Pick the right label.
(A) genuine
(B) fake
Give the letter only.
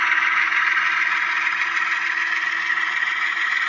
A